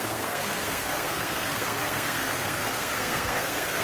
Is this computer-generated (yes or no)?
yes